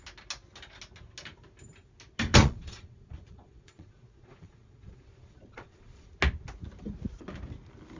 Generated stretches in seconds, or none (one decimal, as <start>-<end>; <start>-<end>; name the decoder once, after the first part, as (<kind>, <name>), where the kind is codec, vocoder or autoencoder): 2.4-6.1 (vocoder, Vocos)